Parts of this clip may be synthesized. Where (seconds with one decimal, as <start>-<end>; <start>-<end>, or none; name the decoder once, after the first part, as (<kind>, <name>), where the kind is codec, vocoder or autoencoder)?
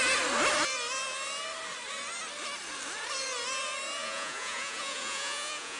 4.0-5.8 (vocoder, Vocos)